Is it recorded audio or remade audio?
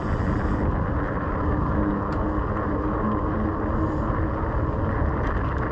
recorded